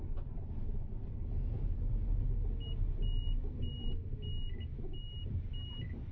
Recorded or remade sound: recorded